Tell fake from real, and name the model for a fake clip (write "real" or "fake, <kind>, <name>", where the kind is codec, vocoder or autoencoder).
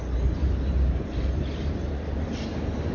fake, vocoder, BigVGAN v2